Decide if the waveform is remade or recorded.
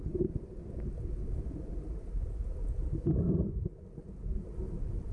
recorded